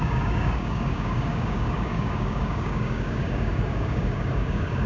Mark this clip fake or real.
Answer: fake